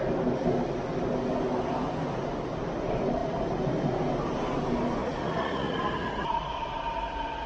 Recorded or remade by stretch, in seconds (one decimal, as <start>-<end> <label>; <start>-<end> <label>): 0.0-5.0 recorded; 5.0-6.5 remade; 6.5-7.5 recorded